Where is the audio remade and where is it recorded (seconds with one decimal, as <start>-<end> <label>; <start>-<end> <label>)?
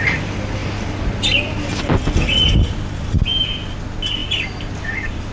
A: 0.0-5.3 recorded